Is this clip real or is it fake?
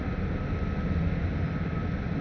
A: real